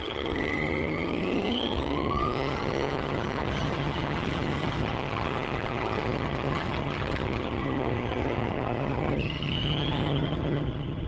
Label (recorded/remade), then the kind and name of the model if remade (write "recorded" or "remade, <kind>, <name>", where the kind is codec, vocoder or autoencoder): remade, vocoder, HiFi-GAN